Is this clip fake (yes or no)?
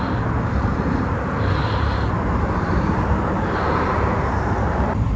yes